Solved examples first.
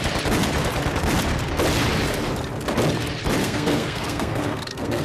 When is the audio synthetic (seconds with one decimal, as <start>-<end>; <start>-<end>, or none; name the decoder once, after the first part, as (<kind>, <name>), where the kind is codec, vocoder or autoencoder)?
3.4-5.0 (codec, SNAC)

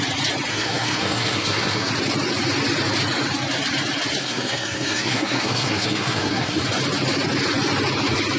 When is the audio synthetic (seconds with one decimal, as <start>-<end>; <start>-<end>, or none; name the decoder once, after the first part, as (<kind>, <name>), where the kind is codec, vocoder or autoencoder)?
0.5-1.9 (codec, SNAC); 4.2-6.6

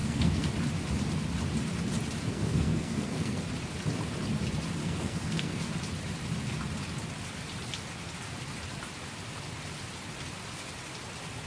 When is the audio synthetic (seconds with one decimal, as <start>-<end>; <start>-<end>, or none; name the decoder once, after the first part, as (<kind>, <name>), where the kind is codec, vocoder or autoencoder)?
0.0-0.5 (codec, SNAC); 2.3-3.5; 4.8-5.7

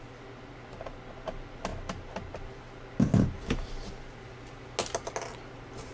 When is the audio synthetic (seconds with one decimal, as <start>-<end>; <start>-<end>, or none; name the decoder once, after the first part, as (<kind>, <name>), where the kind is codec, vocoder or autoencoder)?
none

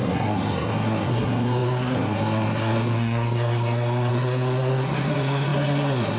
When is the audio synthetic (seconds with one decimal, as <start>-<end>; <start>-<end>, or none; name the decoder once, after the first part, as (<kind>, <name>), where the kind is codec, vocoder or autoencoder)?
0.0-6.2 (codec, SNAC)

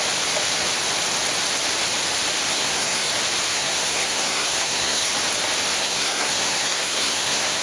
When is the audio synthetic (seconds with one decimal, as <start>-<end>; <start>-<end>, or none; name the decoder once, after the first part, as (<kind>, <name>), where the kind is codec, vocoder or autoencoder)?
2.5-3.1 (codec, SNAC); 3.5-5.1; 5.8-7.6

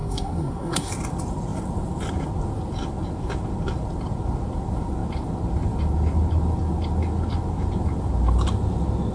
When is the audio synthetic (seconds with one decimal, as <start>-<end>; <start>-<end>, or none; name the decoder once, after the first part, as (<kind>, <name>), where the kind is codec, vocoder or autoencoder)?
0.0-0.9 (codec, SNAC)

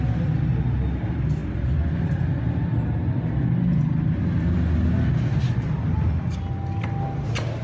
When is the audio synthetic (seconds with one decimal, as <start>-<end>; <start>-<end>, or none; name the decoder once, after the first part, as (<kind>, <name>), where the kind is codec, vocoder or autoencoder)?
none